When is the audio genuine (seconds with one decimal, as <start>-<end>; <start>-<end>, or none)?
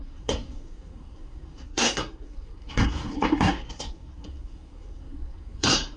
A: none